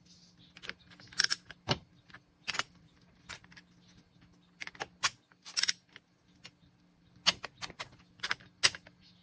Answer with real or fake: real